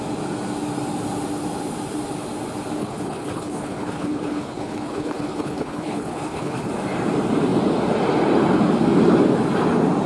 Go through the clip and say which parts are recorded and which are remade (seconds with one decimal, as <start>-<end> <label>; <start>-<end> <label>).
0.0-2.8 recorded; 2.8-6.7 remade; 6.7-10.1 recorded